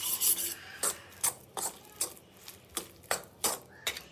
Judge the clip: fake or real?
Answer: real